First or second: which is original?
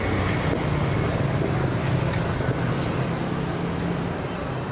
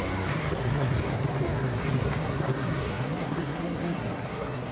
first